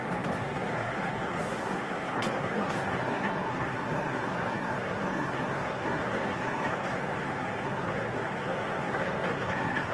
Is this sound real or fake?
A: fake